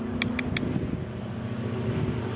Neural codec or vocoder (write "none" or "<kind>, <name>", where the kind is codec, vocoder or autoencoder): none